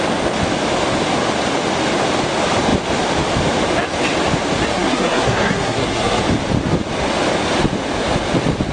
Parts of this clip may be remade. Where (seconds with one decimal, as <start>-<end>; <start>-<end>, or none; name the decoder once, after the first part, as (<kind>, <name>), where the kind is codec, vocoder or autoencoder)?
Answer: 4.7-6.2 (codec, SNAC)